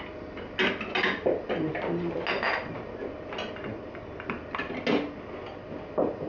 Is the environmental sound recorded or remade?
recorded